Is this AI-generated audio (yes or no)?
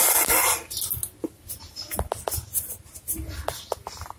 no